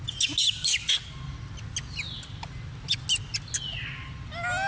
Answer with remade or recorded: recorded